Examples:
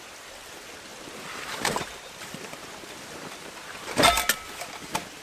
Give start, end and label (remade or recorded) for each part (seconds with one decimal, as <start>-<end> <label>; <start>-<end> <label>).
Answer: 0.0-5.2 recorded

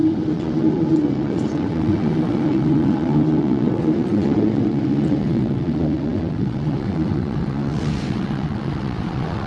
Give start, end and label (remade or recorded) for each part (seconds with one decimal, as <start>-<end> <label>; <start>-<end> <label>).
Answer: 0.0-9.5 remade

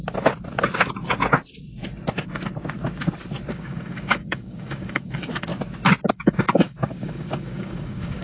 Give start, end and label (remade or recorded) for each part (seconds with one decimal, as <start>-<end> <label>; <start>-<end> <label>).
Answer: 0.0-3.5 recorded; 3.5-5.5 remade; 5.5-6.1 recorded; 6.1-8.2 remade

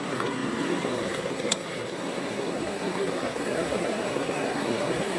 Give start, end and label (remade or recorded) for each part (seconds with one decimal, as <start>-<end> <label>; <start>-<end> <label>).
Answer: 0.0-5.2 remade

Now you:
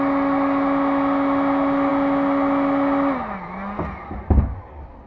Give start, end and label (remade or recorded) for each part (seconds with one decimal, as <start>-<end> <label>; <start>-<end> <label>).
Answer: 0.0-5.1 recorded